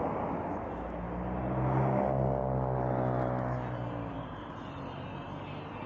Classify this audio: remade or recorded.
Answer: recorded